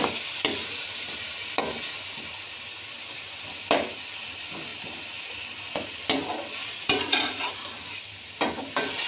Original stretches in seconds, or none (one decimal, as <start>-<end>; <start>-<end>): 0.0-6.6; 7.3-9.1